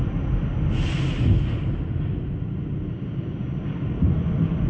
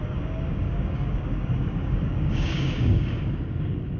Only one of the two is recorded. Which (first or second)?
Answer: first